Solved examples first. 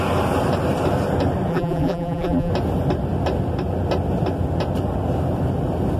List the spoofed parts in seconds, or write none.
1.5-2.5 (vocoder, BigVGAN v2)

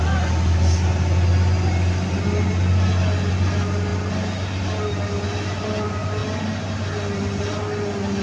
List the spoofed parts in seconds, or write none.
none

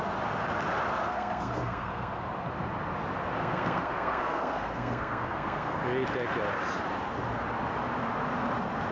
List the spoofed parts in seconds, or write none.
1.0-2.1 (codec, SNAC); 3.4-5.8

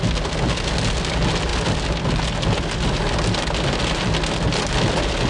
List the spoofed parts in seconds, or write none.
none

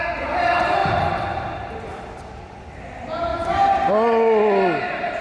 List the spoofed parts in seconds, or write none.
0.8-1.6 (vocoder, BigVGAN v2); 3.3-3.9